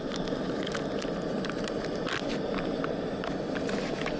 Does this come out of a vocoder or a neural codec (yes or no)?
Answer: no